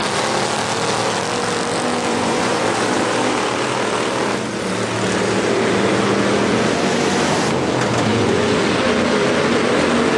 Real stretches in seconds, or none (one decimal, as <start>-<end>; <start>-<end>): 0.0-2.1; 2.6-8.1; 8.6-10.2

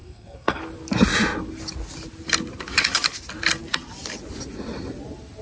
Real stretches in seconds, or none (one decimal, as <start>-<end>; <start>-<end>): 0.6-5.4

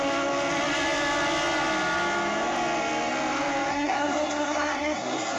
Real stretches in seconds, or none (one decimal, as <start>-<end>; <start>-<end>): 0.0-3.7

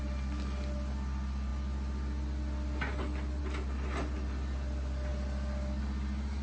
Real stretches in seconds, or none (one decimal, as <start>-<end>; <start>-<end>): 0.0-6.4

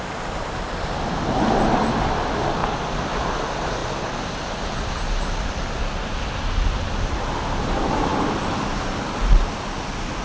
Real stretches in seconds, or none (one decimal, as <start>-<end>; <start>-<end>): 0.0-10.2

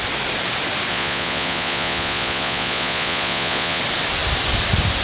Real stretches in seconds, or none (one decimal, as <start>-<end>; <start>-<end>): 0.0-0.9; 3.8-5.0